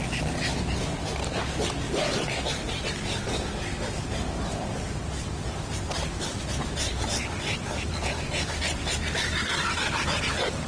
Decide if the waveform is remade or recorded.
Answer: recorded